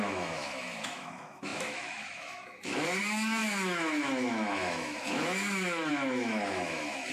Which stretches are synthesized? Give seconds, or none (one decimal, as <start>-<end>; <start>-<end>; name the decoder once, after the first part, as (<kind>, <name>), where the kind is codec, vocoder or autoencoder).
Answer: 0.0-7.1 (autoencoder, DAC-VAE)